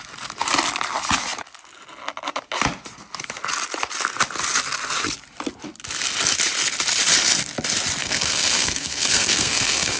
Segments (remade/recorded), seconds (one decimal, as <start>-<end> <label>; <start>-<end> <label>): 0.0-8.0 recorded; 8.0-10.0 remade